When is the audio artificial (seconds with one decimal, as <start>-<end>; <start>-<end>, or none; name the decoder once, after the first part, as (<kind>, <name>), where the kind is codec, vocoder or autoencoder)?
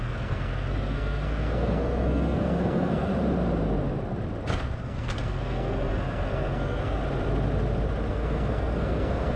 0.0-3.1 (codec, SNAC); 4.5-7.0; 8.1-9.4